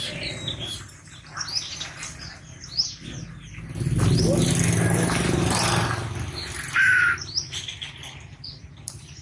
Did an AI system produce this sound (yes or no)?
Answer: no